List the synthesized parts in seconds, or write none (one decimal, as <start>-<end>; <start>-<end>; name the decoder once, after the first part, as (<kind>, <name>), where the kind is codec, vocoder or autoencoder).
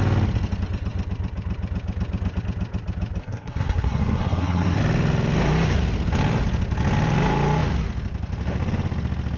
3.2-4.8 (codec, SNAC)